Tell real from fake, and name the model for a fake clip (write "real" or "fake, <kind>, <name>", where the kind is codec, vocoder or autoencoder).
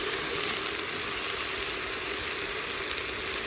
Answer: real